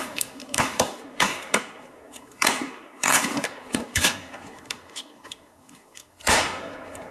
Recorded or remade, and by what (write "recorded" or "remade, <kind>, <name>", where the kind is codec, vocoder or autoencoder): remade, codec, SNAC